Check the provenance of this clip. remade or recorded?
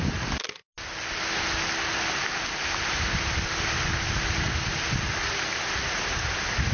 recorded